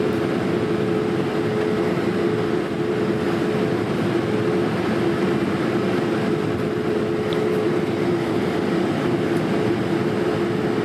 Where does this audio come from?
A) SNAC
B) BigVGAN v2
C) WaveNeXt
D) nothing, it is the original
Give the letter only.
D